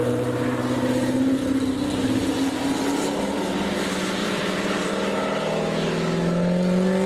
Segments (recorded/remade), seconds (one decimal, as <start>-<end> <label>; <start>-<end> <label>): 0.0-4.2 recorded; 4.2-4.9 remade; 4.9-7.1 recorded